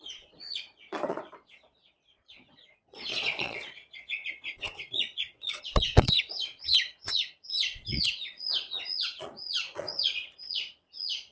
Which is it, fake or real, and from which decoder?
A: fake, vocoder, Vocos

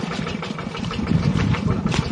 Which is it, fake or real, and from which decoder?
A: real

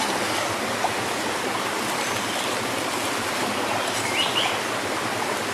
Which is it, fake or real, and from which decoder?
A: real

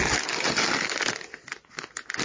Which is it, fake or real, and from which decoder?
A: real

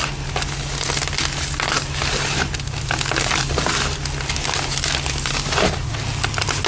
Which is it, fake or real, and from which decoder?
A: real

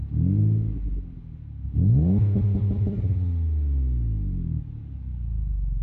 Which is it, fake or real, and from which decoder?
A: real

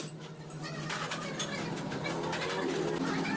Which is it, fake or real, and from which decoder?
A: real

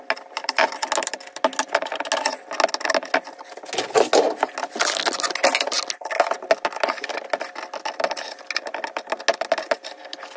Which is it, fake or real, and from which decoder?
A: real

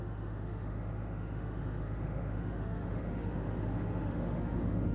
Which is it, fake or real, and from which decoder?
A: fake, autoencoder, DAC-VAE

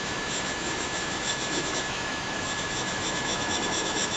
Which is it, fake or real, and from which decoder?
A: fake, autoencoder, DAC-VAE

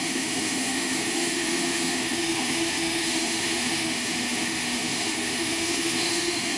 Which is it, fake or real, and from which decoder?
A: fake, autoencoder, DAC-VAE